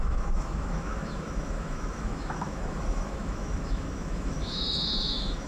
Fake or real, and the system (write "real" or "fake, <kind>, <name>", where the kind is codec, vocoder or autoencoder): fake, autoencoder, DAC-VAE